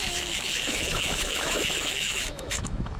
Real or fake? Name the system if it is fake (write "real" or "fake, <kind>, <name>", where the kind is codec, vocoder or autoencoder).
fake, autoencoder, DAC-VAE